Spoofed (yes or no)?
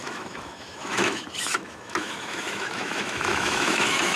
yes